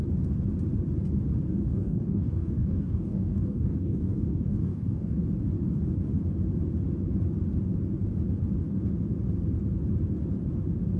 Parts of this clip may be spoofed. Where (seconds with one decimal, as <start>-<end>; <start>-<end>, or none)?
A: 1.5-5.2